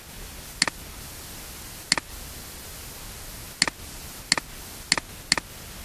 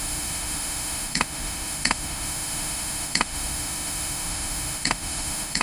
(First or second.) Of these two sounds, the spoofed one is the second